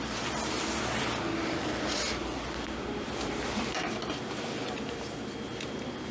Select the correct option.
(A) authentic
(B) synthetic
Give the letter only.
B